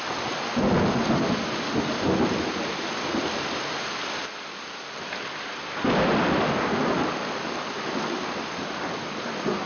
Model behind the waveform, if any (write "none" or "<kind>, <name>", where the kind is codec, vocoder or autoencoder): vocoder, BigVGAN v2